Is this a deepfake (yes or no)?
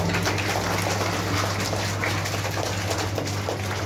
no